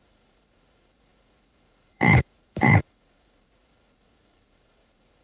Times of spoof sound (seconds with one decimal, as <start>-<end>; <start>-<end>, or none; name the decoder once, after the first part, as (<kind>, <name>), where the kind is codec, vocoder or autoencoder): 0.0-5.2 (vocoder, Vocos)